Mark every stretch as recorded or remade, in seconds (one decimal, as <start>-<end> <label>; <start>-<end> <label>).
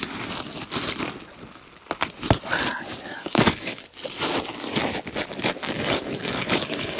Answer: 0.0-3.1 recorded; 3.1-3.8 remade; 3.8-5.6 recorded; 5.6-7.0 remade